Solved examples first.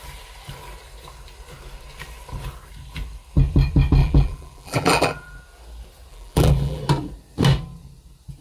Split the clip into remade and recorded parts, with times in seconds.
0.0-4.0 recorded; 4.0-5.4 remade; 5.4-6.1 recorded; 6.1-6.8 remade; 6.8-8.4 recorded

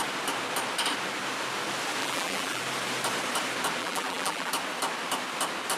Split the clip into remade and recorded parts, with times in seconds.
0.0-2.0 recorded; 2.0-2.6 remade; 2.6-3.8 recorded; 3.8-4.5 remade; 4.5-5.8 recorded

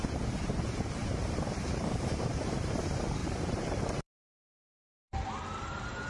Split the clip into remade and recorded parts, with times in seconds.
0.0-1.0 recorded; 1.0-2.7 remade; 2.7-3.2 recorded; 3.2-5.3 remade; 5.3-6.1 recorded

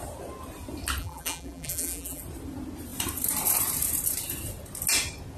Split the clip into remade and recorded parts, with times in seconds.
0.0-1.0 recorded; 1.0-2.2 remade; 2.2-5.4 recorded